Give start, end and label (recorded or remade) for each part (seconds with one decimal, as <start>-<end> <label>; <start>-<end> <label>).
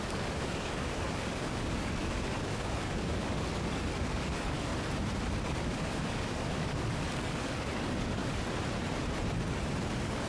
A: 0.0-4.7 remade; 4.7-5.5 recorded; 5.5-8.2 remade; 8.2-9.8 recorded; 9.8-10.3 remade